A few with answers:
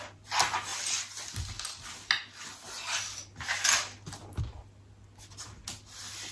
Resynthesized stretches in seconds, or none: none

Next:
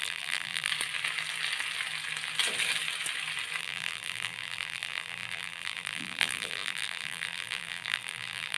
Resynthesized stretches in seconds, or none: 0.0-0.7 (vocoder, BigVGAN v2); 3.6-8.6

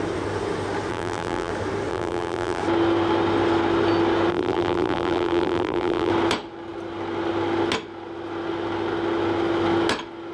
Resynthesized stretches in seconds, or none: 0.9-1.5 (vocoder, BigVGAN v2); 1.9-2.6; 4.3-6.1

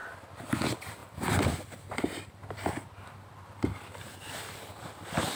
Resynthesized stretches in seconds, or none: 0.0-0.6 (vocoder, BigVGAN v2); 1.0-4.2

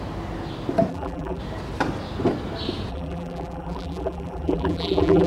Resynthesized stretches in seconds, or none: 0.9-1.4 (vocoder, BigVGAN v2); 2.9-5.3

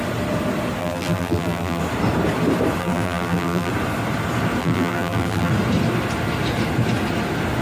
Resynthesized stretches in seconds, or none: 0.8-1.8 (vocoder, BigVGAN v2); 2.8-3.7; 4.6-5.5

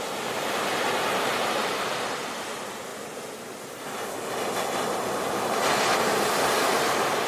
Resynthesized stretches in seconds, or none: 0.0-2.9 (vocoder, BigVGAN v2); 5.4-7.3

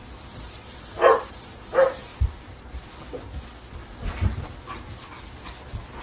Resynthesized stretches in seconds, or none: 0.0-1.3 (vocoder, BigVGAN v2); 2.1-3.1